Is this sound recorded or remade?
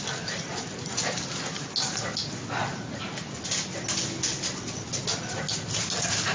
recorded